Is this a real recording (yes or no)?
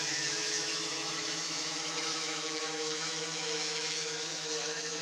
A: no